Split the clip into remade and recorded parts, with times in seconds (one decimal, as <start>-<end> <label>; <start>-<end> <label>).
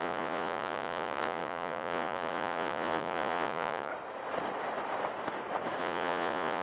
0.0-3.9 remade; 3.9-5.8 recorded; 5.8-6.6 remade